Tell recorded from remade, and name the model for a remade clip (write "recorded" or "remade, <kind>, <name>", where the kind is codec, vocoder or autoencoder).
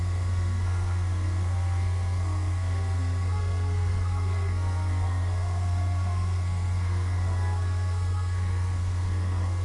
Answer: remade, codec, SNAC